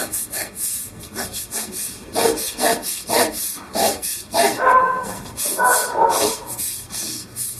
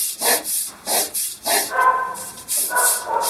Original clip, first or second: second